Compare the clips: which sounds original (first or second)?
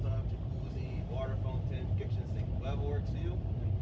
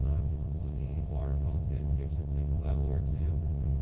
first